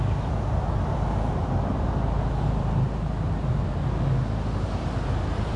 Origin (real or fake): real